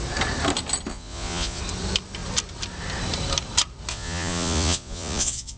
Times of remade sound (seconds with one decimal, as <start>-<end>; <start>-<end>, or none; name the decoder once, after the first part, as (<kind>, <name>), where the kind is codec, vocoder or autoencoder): 0.9-1.6 (vocoder, Vocos); 3.9-5.6